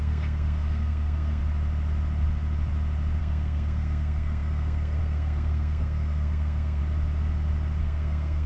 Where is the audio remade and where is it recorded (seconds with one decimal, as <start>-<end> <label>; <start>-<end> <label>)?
0.0-1.4 remade; 1.4-3.2 recorded; 3.2-6.8 remade; 6.8-7.8 recorded; 7.8-8.5 remade